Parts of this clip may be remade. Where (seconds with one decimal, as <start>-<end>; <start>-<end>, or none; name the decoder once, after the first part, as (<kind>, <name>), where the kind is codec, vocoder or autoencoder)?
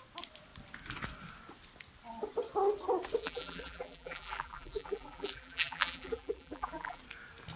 3.2-7.0 (vocoder, BigVGAN v2)